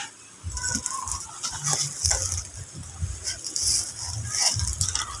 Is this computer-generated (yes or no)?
no